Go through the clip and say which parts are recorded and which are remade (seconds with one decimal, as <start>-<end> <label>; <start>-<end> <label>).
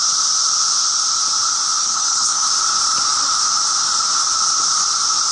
0.0-1.8 recorded; 1.8-2.5 remade; 2.5-5.3 recorded